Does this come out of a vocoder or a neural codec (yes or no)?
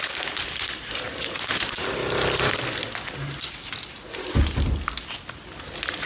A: no